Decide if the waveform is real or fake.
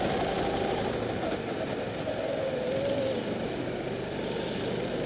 real